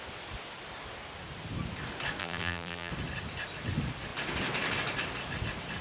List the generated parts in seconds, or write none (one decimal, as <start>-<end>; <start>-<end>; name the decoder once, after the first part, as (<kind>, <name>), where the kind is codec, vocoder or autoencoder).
2.2-2.9 (vocoder, BigVGAN v2)